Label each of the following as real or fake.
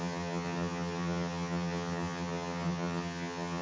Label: fake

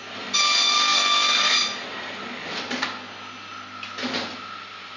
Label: real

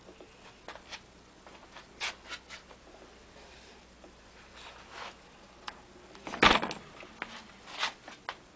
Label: real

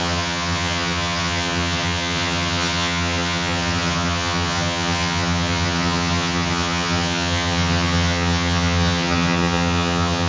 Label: fake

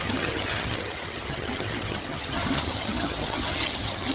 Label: fake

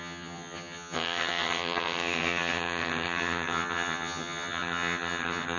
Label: fake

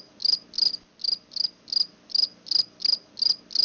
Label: real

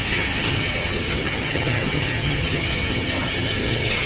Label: fake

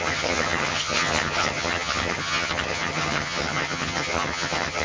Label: fake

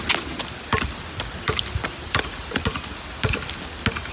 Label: real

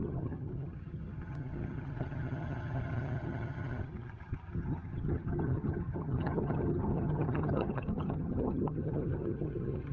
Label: fake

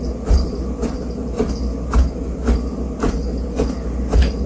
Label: real